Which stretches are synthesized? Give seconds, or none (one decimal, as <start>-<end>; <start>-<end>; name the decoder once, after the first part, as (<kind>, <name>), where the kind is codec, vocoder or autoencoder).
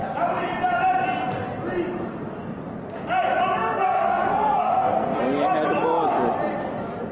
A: 3.6-5.2 (codec, SNAC)